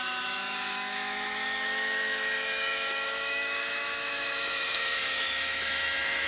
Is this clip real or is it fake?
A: fake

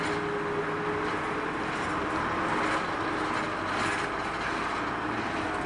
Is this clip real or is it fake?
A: real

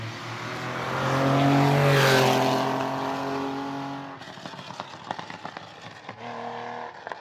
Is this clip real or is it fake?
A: real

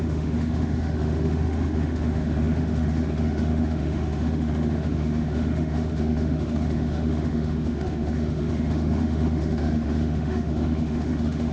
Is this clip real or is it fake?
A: fake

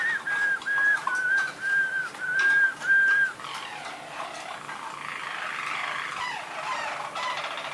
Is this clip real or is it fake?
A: real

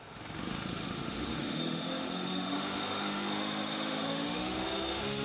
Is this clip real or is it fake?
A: fake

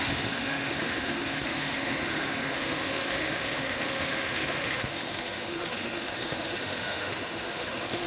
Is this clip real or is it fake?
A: fake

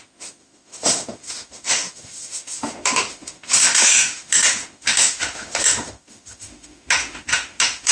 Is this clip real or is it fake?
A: fake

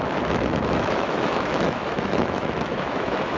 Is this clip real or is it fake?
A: fake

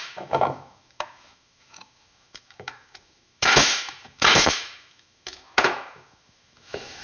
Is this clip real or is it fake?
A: fake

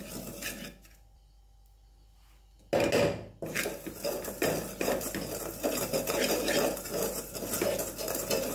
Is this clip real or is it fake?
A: real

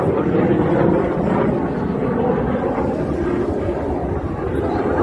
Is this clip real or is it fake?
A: real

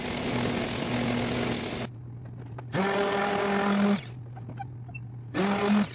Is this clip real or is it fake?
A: real